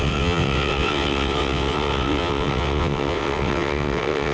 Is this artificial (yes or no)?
yes